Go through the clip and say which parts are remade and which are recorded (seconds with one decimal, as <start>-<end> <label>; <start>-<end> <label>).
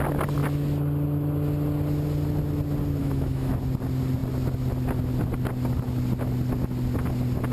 0.0-3.0 recorded; 3.0-3.5 remade; 3.5-7.5 recorded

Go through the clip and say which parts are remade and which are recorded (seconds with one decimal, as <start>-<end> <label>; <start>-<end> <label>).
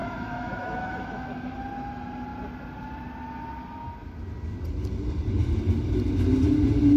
0.0-1.6 remade; 1.6-7.0 recorded